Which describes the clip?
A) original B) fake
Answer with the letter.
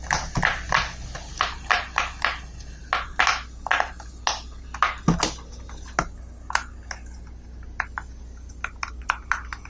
A